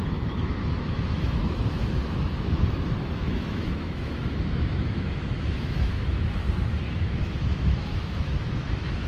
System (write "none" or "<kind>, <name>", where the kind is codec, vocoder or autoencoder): autoencoder, DAC-VAE